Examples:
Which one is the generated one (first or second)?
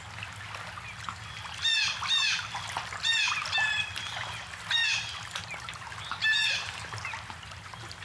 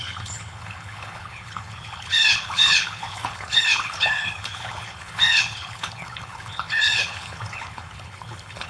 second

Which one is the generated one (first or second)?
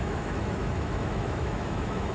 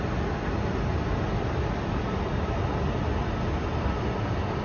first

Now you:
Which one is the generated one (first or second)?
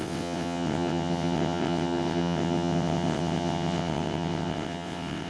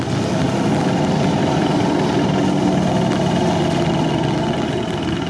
first